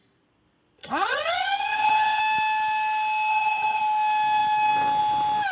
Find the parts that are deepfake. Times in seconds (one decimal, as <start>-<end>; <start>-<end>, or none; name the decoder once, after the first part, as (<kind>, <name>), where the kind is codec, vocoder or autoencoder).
0.8-2.2 (vocoder, HiFi-GAN); 3.3-3.8